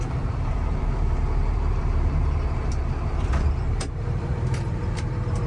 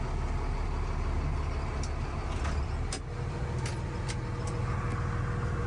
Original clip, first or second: second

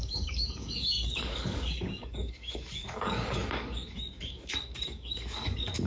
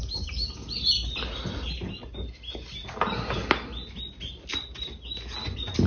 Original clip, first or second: second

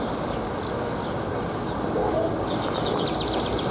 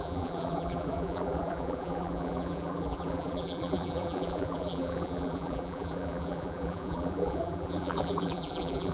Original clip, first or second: first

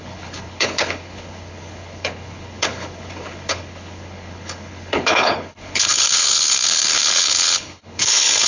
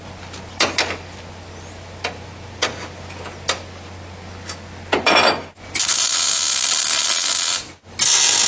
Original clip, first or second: second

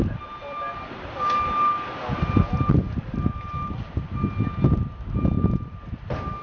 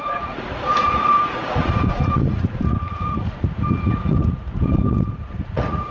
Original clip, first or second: first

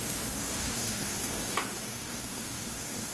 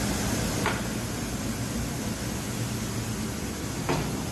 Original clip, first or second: second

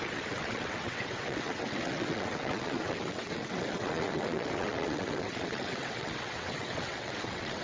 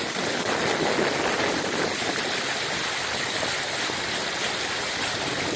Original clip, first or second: second